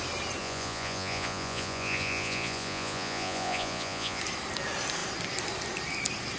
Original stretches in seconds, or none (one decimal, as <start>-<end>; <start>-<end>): 0.0-0.4; 4.2-6.4